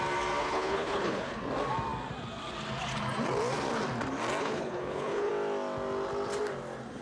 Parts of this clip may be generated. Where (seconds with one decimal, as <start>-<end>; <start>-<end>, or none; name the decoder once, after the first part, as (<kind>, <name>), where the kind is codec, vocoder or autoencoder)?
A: 0.4-1.4 (codec, HILCodec); 4.4-5.3